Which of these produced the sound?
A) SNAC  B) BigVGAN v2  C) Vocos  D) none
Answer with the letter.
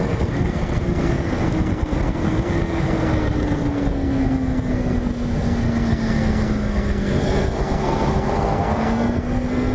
A